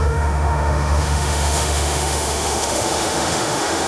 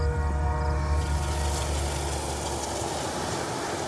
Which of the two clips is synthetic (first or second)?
first